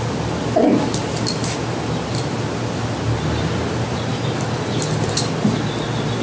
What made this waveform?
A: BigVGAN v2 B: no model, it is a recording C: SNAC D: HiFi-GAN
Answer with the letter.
B